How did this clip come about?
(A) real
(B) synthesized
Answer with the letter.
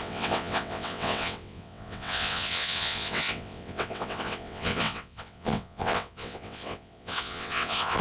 B